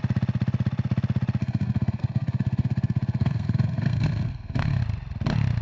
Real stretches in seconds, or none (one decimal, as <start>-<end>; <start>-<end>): 0.0-1.4; 4.8-5.6